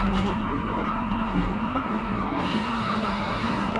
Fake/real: fake